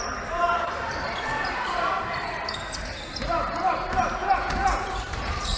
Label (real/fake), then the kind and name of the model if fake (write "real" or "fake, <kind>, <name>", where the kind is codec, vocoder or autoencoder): fake, vocoder, BigVGAN v2